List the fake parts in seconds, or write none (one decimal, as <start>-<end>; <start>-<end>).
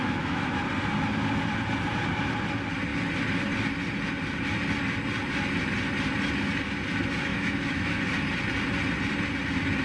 0.0-0.6; 7.3-8.0